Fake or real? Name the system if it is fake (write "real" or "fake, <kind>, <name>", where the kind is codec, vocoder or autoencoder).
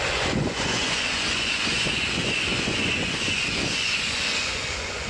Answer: fake, vocoder, Vocos